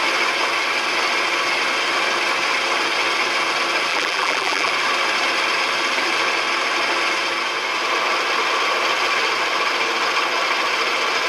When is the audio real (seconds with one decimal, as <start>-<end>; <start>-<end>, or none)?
0.0-3.9; 4.7-11.3